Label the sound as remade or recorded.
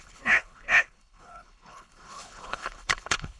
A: remade